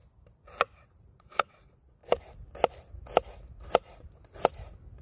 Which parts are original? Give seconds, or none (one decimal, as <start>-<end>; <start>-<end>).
0.0-1.0; 2.0-5.0